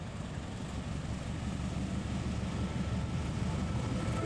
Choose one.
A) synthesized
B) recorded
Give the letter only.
B